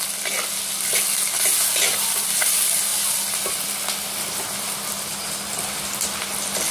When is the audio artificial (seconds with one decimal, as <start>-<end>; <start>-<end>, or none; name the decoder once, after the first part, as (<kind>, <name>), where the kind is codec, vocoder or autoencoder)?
none